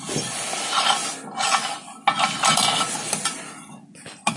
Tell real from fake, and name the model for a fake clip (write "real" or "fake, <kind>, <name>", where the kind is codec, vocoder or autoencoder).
real